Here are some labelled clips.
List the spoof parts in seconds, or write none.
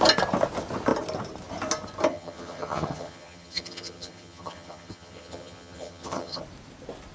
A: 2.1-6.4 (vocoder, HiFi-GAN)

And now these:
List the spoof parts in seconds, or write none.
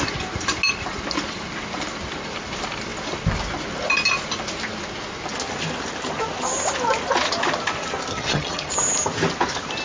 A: 8.1-8.7 (vocoder, HiFi-GAN)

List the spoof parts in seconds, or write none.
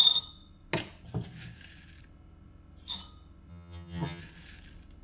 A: 3.5-4.2 (vocoder, HiFi-GAN)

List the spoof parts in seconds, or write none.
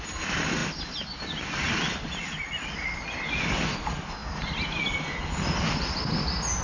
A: none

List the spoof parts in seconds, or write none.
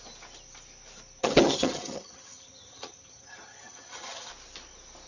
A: 1.2-4.3 (vocoder, HiFi-GAN)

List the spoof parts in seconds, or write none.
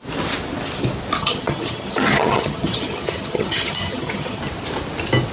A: 1.2-4.4 (vocoder, HiFi-GAN)